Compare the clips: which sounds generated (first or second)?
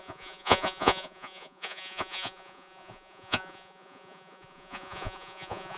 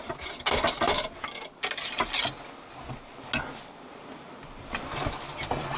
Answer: first